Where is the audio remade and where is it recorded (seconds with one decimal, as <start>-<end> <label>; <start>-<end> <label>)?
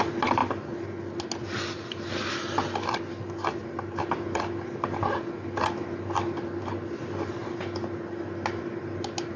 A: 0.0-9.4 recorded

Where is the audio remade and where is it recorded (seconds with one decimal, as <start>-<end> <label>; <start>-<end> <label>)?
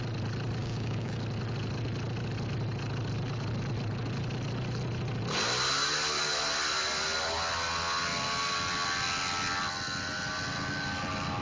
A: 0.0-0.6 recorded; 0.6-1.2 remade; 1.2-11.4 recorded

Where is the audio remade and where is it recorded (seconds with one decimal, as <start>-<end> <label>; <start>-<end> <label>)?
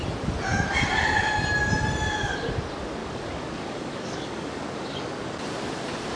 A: 0.0-3.0 recorded; 3.0-5.4 remade; 5.4-6.2 recorded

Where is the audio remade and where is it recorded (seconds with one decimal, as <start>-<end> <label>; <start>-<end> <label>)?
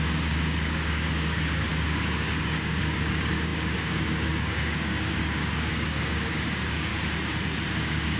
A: 0.0-6.9 remade; 6.9-7.7 recorded; 7.7-8.2 remade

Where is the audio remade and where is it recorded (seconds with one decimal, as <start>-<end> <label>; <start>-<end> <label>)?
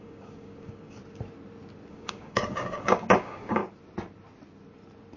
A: 0.0-1.0 remade; 1.0-1.9 recorded; 1.9-3.6 remade; 3.6-5.2 recorded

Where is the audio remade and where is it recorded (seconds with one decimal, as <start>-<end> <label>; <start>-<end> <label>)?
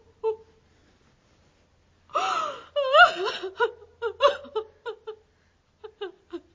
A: 0.0-6.5 recorded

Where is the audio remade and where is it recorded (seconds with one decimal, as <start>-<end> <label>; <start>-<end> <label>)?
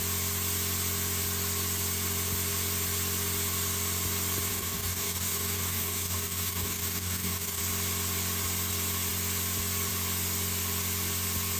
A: 0.0-4.5 recorded; 4.5-7.6 remade; 7.6-11.6 recorded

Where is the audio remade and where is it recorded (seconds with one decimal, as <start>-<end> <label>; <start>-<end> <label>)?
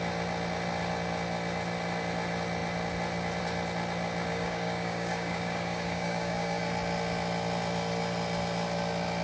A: 0.0-4.3 recorded; 4.3-6.6 remade; 6.6-9.2 recorded